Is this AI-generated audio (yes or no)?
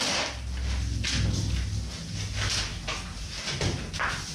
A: no